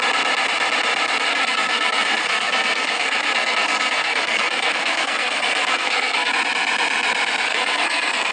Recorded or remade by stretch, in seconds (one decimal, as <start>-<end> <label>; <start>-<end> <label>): 0.0-1.3 recorded; 1.3-6.3 remade; 6.3-7.5 recorded; 7.5-8.3 remade